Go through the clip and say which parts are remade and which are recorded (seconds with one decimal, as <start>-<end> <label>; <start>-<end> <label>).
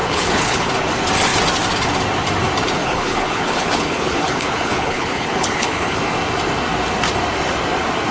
0.0-0.7 remade; 0.7-2.8 recorded; 2.8-6.0 remade; 6.0-8.1 recorded